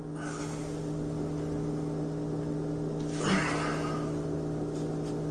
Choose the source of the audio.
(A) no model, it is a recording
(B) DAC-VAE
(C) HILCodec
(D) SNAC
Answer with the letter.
A